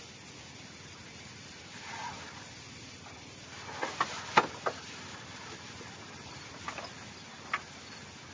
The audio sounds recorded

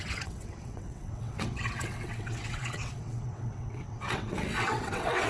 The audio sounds remade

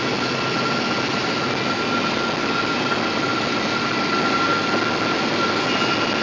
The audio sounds recorded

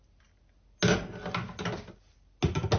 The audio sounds recorded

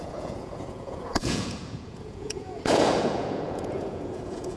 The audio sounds remade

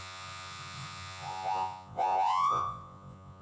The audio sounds remade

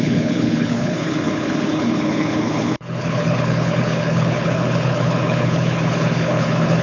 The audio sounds remade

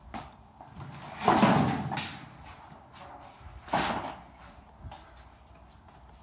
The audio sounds recorded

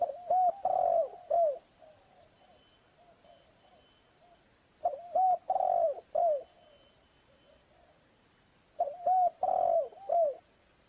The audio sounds recorded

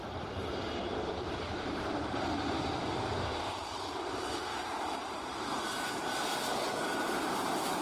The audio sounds remade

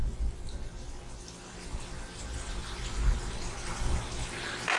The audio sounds recorded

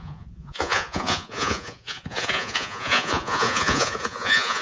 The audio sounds remade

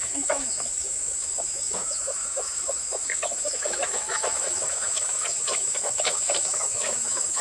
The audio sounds remade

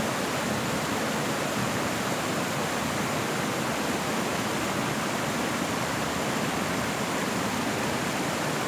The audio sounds recorded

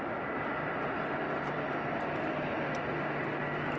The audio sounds recorded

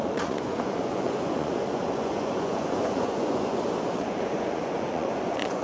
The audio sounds remade